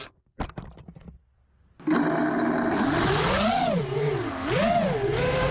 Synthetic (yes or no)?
no